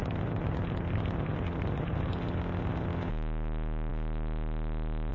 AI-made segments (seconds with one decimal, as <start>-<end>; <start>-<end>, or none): 0.0-3.1